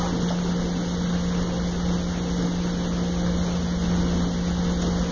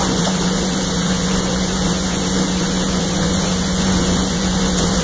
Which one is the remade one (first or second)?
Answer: second